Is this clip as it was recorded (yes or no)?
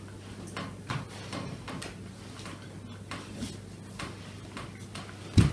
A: yes